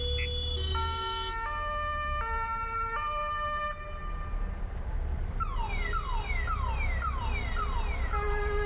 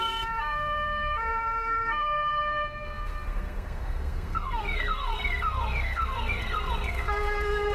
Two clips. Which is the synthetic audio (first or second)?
second